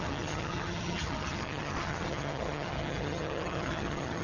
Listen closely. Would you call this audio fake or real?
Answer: fake